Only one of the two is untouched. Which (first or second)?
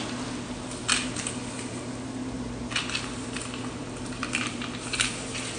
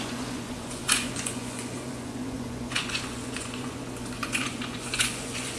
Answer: first